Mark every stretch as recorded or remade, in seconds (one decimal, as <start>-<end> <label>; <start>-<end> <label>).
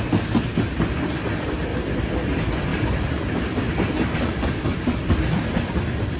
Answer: 0.0-2.7 recorded; 2.7-6.2 remade